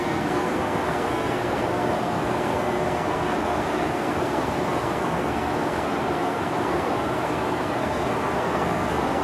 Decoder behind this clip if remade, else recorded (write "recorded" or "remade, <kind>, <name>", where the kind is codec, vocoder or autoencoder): remade, codec, SNAC